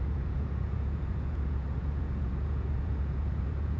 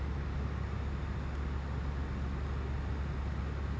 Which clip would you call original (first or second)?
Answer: second